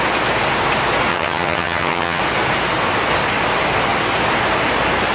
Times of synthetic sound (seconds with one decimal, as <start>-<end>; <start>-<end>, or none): 1.1-2.2